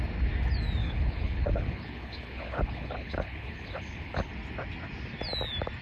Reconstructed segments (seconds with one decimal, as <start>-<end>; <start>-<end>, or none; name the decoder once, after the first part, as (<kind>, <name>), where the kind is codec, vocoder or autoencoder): 0.8-4.3 (codec, HILCodec)